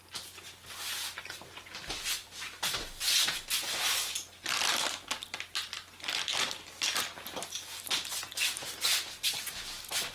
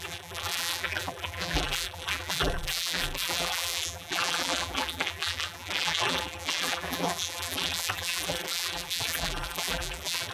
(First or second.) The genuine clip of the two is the first